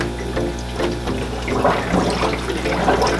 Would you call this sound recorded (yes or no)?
yes